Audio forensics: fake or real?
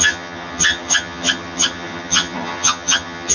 fake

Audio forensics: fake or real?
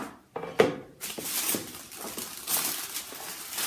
real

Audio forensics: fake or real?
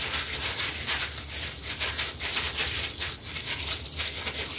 real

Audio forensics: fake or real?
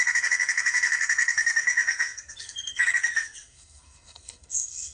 fake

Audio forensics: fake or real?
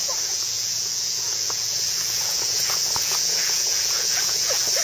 fake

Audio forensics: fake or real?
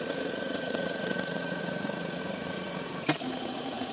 fake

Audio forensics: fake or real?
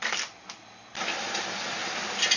real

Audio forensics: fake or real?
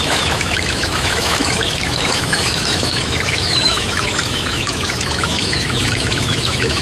fake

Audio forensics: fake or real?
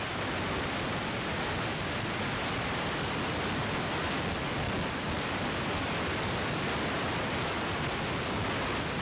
real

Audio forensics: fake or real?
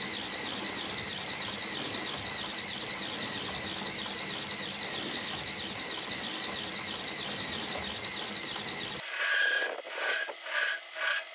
real